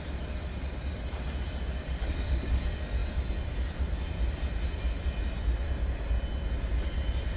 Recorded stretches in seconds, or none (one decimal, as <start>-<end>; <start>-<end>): 3.0-7.4